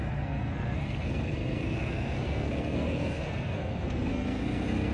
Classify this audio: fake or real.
fake